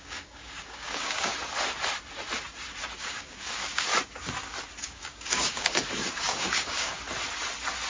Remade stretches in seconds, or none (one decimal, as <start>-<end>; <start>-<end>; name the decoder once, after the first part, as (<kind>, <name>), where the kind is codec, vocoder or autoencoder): 0.0-1.3 (codec, DAC); 3.0-3.9; 4.8-6.9